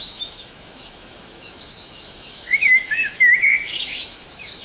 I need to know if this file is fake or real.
fake